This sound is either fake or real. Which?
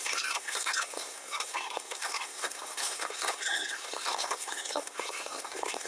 fake